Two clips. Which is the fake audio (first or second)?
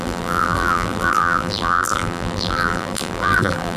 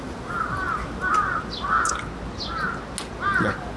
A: first